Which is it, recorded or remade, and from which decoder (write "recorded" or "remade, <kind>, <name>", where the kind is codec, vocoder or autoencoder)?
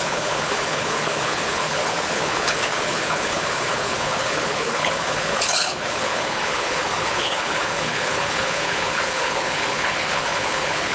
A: remade, codec, HILCodec